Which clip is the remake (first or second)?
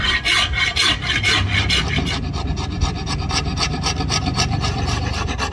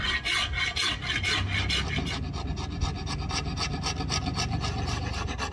first